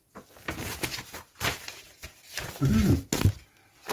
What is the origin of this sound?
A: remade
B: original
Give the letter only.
B